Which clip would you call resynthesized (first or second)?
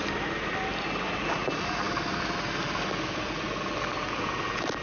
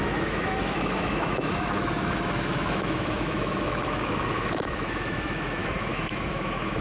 second